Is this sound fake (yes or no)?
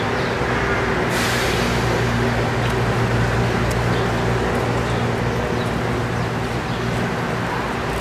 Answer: no